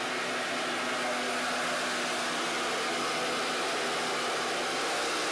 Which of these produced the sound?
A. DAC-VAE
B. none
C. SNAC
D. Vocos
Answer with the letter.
B